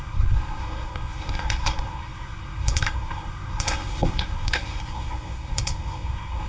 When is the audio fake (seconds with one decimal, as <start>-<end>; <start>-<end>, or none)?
0.0-6.5